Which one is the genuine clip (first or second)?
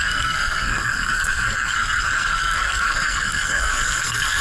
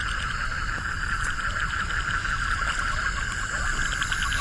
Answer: second